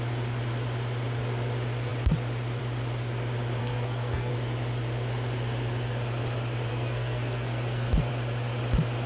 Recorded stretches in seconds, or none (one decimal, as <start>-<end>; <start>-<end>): 0.0-3.6; 4.3-6.7; 8.1-9.1